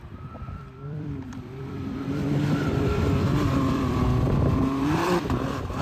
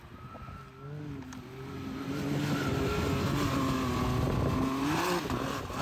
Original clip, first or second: second